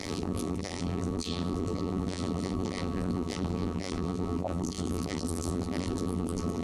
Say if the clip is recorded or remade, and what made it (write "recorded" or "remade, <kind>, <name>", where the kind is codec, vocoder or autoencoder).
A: remade, vocoder, BigVGAN v2